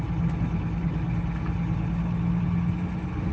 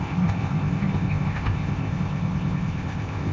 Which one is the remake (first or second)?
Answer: second